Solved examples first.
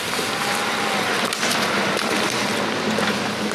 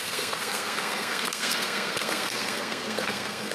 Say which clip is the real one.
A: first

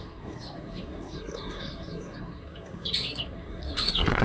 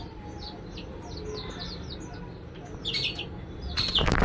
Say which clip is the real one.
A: second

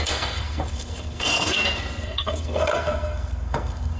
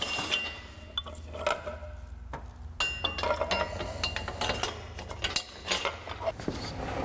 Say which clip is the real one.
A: second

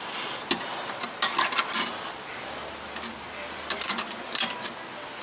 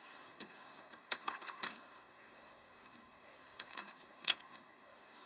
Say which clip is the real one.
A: first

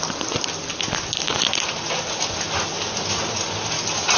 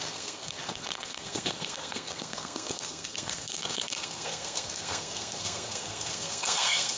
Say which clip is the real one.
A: first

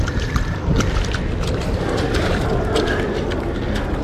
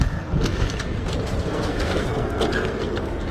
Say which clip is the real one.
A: first